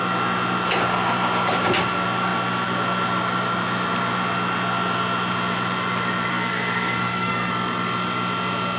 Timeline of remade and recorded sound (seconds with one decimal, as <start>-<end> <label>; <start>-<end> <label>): 0.0-6.3 recorded; 6.3-7.5 remade; 7.5-8.8 recorded